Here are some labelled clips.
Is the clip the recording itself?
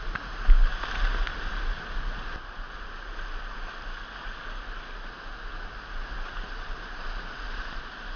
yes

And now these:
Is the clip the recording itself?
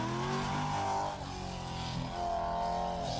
yes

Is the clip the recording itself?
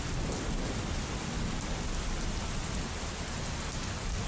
yes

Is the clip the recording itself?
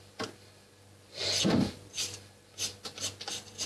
yes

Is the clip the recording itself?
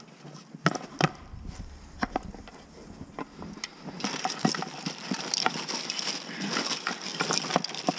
yes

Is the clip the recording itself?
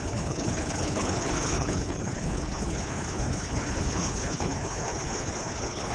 no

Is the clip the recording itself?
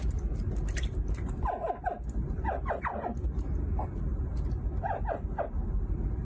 yes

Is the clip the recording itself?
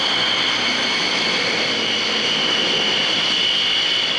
yes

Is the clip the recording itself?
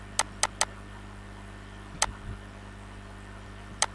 yes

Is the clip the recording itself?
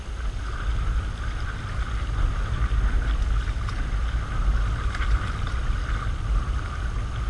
yes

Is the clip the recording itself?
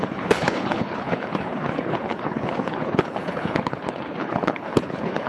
no